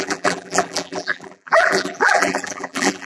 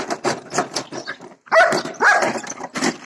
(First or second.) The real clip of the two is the second